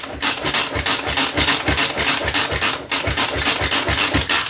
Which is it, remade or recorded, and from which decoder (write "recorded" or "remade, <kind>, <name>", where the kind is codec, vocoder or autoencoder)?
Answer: recorded